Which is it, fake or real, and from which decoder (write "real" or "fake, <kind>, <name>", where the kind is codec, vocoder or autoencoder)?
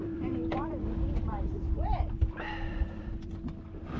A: fake, vocoder, BigVGAN v2